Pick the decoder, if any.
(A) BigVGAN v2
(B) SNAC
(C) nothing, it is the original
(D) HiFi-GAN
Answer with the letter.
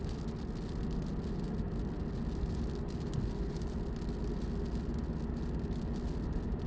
C